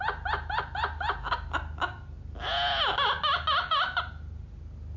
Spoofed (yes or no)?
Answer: no